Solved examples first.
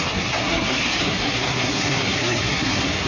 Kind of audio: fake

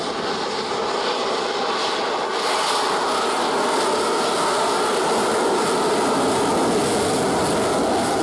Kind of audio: real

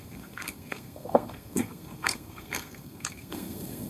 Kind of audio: fake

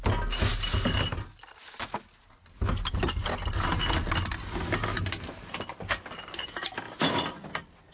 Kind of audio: real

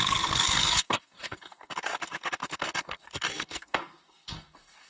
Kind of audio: fake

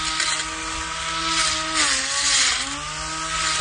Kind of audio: real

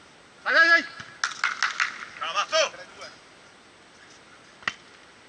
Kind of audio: real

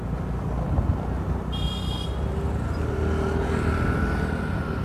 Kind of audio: real